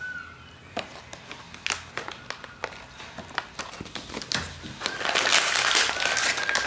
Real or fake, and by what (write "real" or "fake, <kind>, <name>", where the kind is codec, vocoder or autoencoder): real